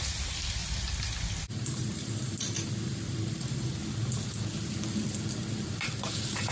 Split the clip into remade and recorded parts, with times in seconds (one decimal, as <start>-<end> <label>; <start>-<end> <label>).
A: 0.0-0.6 recorded; 0.6-3.5 remade; 3.5-6.5 recorded